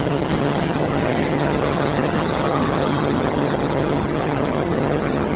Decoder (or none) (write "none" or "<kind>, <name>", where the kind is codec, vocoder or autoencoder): vocoder, HiFi-GAN